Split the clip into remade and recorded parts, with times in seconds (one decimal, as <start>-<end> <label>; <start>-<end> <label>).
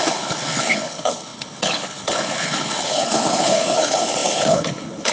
0.0-5.1 remade